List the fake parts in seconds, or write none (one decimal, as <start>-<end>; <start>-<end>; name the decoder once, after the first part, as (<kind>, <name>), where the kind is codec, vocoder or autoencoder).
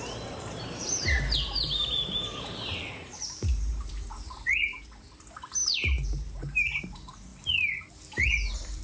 0.0-8.8 (vocoder, BigVGAN v2)